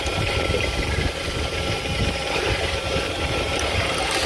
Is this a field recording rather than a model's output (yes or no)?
no